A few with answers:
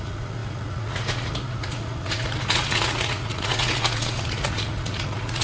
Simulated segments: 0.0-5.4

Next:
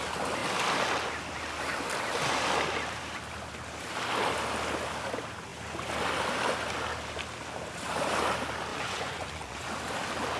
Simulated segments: 8.7-9.7

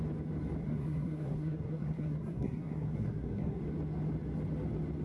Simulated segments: 0.6-3.6

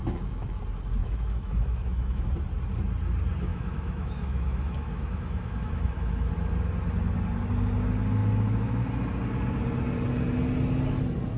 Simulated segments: 0.0-0.6; 1.0-2.3; 3.5-6.3; 8.2-8.8

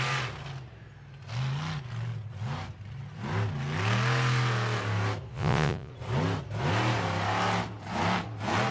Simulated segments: 5.3-5.9